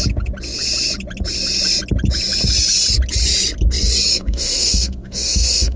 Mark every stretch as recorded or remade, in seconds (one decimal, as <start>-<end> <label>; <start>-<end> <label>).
0.0-4.1 recorded; 4.1-5.8 remade